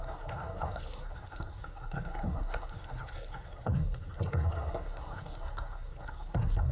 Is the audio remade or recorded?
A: remade